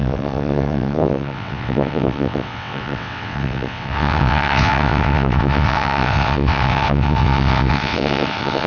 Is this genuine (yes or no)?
no